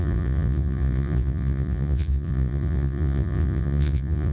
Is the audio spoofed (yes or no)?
yes